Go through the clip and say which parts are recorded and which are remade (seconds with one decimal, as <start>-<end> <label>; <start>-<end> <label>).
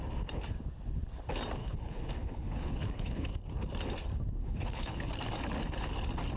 0.0-1.6 recorded; 1.6-3.3 remade; 3.3-4.4 recorded; 4.4-5.1 remade; 5.1-6.4 recorded